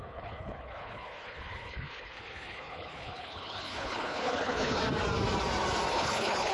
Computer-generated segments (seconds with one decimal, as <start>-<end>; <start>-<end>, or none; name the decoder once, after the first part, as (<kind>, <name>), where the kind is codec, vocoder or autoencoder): 0.0-4.8 (codec, HILCodec); 5.9-6.5